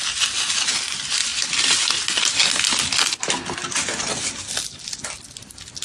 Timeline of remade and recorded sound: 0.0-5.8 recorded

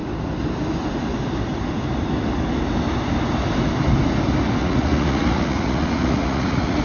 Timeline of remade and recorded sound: 0.0-4.6 recorded; 4.6-6.8 remade

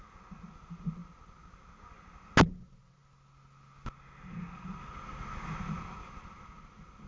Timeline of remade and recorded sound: 0.0-7.1 recorded

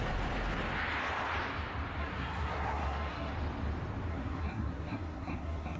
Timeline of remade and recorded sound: 0.0-2.0 recorded; 2.0-3.3 remade; 3.3-4.1 recorded; 4.1-5.8 remade

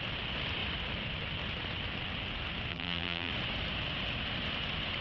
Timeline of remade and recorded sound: 0.0-2.7 recorded; 2.7-3.3 remade; 3.3-5.0 recorded

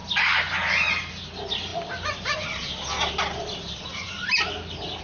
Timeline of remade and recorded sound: 0.0-5.0 recorded

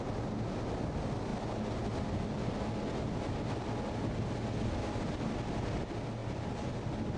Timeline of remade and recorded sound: 0.0-6.2 recorded; 6.2-7.2 remade

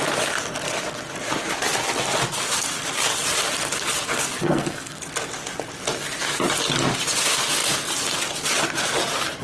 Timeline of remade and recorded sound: 0.0-4.4 recorded; 4.4-5.0 remade; 5.0-9.4 recorded